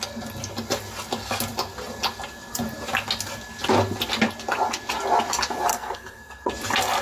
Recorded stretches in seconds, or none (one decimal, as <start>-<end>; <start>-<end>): 0.0-5.7; 6.5-7.0